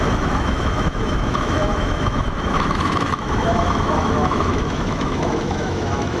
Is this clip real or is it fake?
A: fake